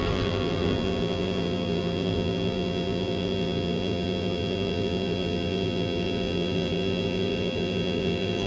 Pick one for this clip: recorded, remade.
remade